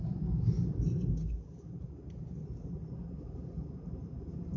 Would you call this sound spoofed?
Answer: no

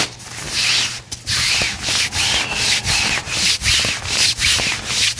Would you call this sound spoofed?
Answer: no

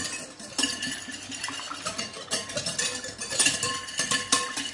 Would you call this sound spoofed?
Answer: no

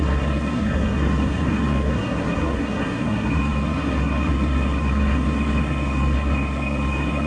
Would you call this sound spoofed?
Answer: yes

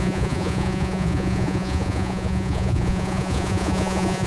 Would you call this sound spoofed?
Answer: yes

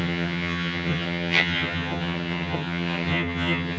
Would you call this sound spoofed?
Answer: yes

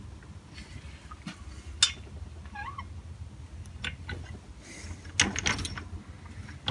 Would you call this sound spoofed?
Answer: no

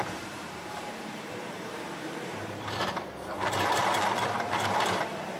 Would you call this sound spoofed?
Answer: yes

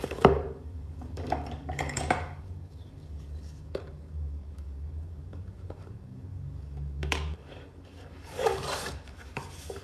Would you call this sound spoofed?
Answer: yes